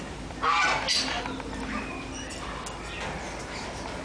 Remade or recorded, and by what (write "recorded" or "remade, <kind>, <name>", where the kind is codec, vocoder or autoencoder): recorded